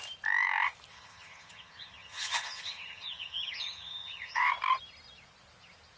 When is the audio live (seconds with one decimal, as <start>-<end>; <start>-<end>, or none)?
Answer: 0.0-0.9; 4.5-6.0